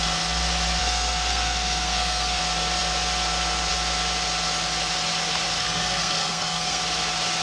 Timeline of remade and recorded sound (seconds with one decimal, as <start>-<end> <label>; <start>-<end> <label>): 0.0-0.8 recorded; 0.8-2.4 remade; 2.4-5.6 recorded; 5.6-6.8 remade; 6.8-7.4 recorded